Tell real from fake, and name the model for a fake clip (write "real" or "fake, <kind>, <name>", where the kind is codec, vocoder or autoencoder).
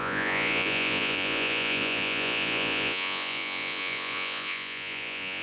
fake, vocoder, Vocos